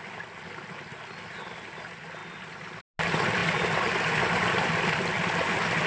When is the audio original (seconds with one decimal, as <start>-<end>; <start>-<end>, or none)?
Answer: 0.0-5.9